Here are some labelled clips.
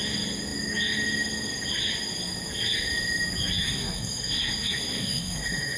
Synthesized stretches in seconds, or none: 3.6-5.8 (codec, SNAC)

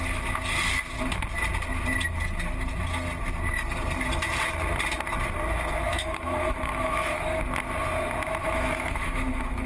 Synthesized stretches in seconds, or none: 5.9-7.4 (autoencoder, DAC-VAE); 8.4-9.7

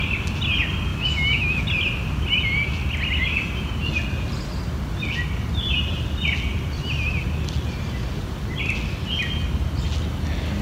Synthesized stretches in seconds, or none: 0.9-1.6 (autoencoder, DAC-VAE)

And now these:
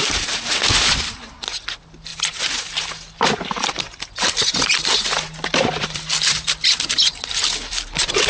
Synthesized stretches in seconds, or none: none